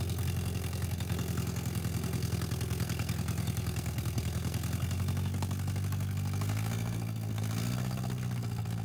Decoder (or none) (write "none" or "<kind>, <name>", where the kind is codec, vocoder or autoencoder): codec, SNAC